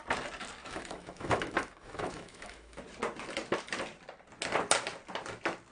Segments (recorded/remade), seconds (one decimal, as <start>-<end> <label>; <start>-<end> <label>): 0.0-0.6 recorded; 0.6-2.8 remade; 2.8-5.7 recorded